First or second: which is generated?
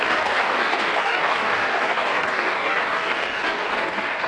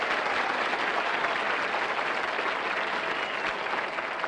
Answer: first